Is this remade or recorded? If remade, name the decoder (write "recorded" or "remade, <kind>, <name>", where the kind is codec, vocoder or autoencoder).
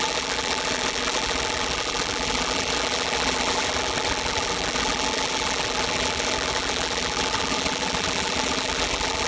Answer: remade, vocoder, BigVGAN v2